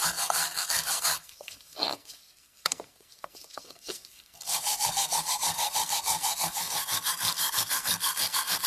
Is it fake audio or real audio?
fake